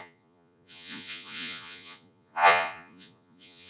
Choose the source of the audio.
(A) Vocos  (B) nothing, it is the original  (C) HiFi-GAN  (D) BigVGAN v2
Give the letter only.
A